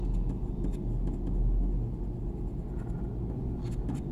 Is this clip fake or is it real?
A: real